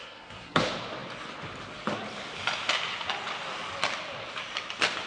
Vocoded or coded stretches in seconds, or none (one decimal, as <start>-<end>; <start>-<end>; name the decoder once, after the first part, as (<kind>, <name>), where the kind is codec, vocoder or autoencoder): 0.0-0.6 (codec, SNAC)